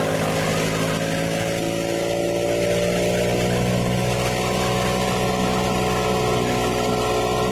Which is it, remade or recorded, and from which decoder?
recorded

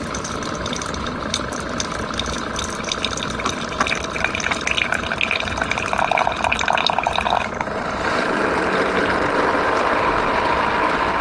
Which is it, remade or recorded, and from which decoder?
recorded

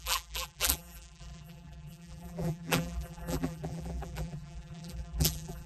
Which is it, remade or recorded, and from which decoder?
remade, vocoder, BigVGAN v2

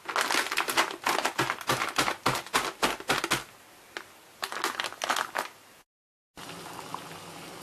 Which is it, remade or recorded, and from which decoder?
recorded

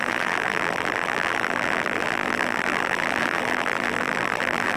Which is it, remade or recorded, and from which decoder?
remade, vocoder, BigVGAN v2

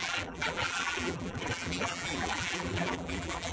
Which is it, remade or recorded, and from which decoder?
remade, vocoder, BigVGAN v2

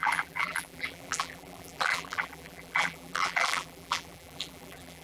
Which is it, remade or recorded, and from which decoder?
remade, vocoder, BigVGAN v2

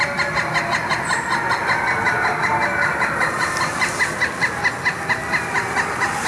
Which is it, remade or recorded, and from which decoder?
recorded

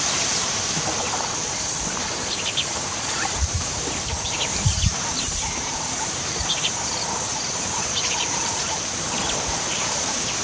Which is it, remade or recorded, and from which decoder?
remade, vocoder, BigVGAN v2